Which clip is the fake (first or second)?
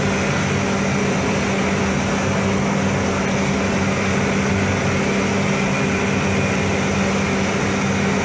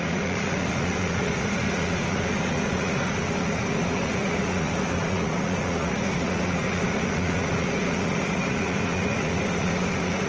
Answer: second